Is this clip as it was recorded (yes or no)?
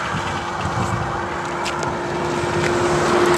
yes